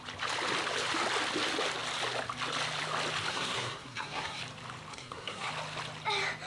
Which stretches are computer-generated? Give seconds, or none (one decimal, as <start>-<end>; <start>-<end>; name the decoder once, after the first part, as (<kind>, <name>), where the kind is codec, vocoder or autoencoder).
3.3-4.4 (codec, SNAC); 4.9-5.5